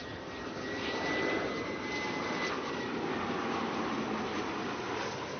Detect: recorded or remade recorded